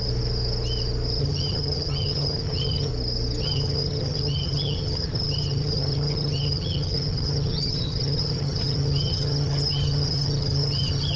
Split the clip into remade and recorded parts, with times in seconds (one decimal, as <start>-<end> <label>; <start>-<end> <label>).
0.0-1.2 recorded; 1.2-2.9 remade; 2.9-3.4 recorded; 3.4-11.2 remade